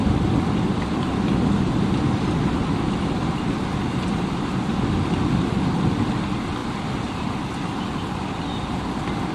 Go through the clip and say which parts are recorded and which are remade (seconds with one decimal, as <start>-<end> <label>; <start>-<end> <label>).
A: 0.0-9.3 recorded